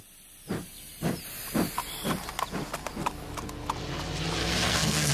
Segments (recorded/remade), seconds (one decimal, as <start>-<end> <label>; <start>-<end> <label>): 0.0-4.4 recorded; 4.4-5.1 remade